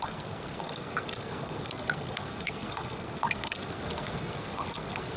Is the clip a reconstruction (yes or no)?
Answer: yes